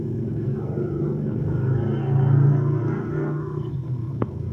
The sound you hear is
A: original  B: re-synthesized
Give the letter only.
B